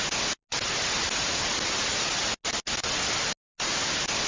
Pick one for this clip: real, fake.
real